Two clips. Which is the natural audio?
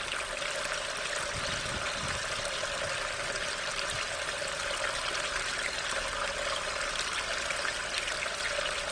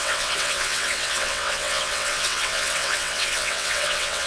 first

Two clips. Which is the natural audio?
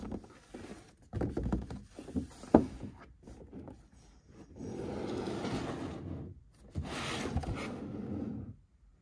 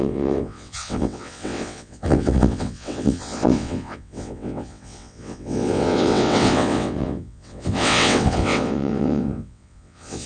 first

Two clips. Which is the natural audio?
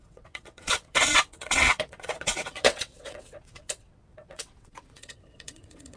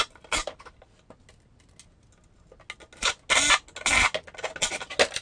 second